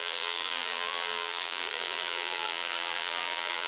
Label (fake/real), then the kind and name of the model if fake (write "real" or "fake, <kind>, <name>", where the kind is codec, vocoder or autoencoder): fake, vocoder, BigVGAN v2